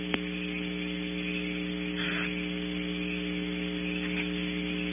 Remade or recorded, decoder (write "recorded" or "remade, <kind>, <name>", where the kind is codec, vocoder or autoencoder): recorded